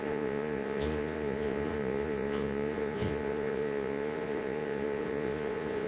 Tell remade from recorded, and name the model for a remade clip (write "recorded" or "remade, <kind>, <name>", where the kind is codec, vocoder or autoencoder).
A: remade, vocoder, Vocos